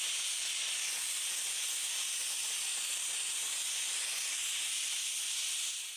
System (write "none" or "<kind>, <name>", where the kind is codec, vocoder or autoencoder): none